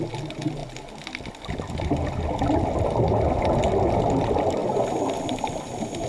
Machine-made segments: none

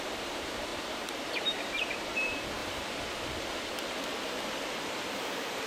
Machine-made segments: 0.0-0.7; 1.4-2.6; 4.8-5.7

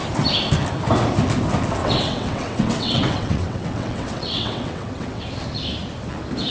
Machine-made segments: 1.8-5.2

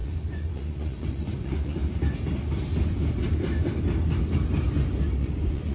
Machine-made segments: 0.0-1.8; 5.2-5.7

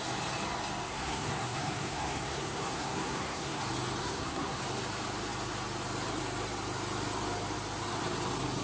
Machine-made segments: 0.9-3.6; 4.0-4.6

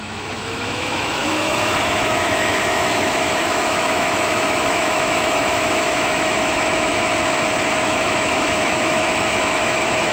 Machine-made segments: 0.0-7.1; 7.8-10.1